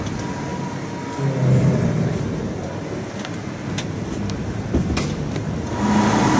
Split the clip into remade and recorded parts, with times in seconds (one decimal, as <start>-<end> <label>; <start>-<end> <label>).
0.0-6.4 recorded